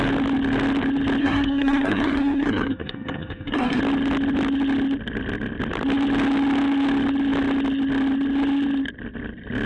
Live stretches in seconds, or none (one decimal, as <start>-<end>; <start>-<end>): 0.0-1.2; 3.8-9.7